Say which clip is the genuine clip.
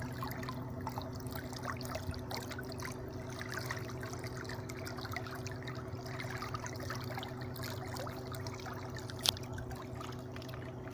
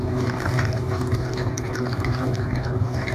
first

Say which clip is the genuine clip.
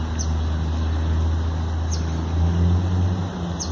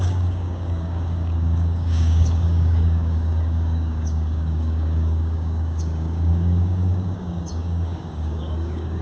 first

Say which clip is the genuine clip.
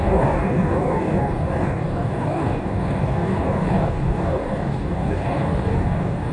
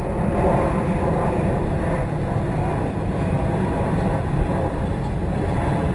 second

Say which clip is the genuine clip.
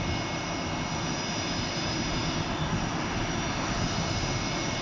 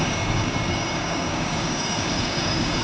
first